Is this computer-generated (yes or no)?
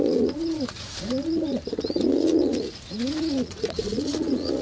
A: yes